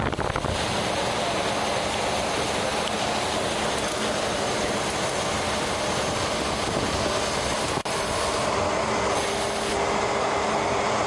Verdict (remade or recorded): recorded